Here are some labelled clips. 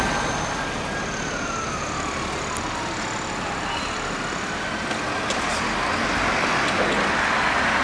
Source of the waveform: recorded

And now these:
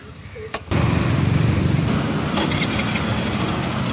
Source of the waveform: recorded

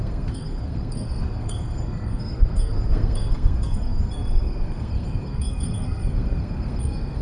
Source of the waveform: remade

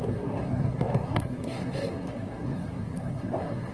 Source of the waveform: remade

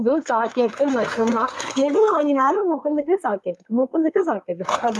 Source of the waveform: remade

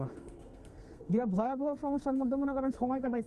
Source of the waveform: remade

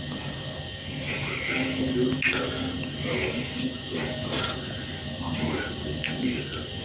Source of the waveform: recorded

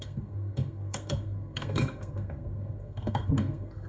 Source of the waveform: remade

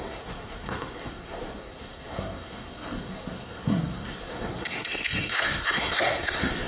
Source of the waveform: remade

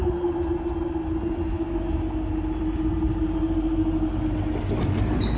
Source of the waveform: recorded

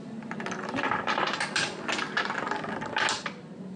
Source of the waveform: recorded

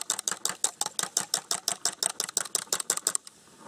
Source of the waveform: recorded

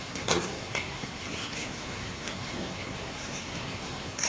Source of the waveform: remade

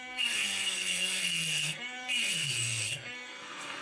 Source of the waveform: remade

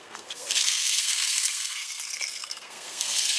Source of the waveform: remade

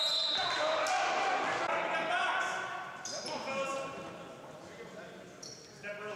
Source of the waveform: recorded